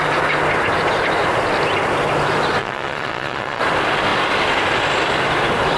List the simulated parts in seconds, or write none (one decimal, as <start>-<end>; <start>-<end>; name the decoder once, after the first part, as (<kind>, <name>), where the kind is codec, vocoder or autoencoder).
2.6-3.6 (vocoder, Vocos)